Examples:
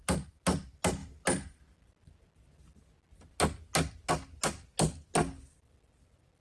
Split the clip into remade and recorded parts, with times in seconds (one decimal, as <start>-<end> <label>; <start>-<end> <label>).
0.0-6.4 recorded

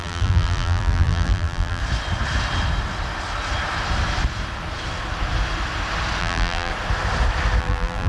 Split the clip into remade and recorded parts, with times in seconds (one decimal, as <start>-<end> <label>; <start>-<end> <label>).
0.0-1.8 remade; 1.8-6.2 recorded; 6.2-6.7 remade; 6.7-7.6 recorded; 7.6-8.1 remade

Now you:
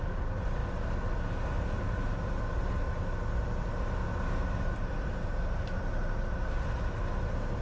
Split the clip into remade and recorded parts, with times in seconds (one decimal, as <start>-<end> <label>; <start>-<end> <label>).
0.0-7.6 recorded

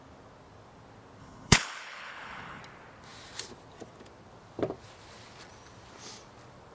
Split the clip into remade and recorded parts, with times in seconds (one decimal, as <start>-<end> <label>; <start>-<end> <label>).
0.0-1.2 recorded; 1.2-2.6 remade; 2.6-6.7 recorded

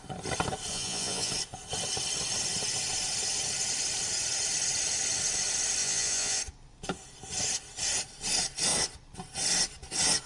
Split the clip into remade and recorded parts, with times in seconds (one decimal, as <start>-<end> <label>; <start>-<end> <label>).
0.0-0.7 recorded; 0.7-1.3 remade; 1.3-5.8 recorded; 5.8-6.4 remade; 6.4-10.3 recorded

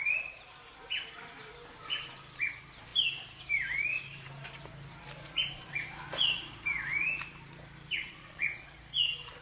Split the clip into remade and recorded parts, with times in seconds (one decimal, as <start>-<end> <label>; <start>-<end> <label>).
0.0-8.0 recorded; 8.0-8.6 remade; 8.6-9.4 recorded

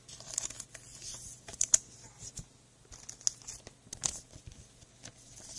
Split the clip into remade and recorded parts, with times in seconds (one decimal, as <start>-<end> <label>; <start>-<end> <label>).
0.0-3.1 remade; 3.1-5.6 recorded